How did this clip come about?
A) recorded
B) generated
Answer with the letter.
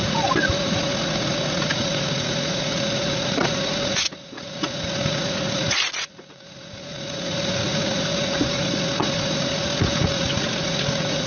B